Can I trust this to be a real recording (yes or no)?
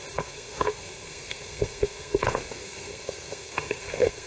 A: no